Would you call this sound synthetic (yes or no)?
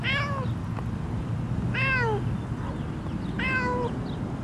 no